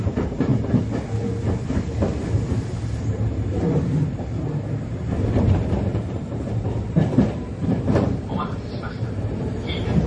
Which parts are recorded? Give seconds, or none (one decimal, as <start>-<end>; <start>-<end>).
0.5-2.5